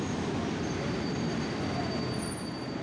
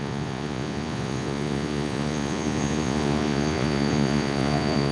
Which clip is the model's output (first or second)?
second